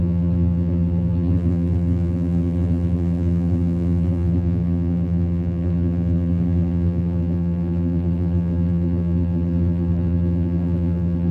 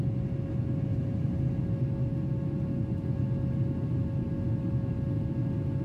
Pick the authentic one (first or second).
second